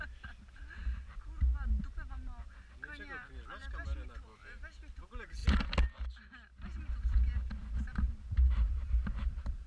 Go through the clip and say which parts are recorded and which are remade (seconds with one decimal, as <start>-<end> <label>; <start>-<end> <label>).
0.0-7.6 recorded; 7.6-9.7 remade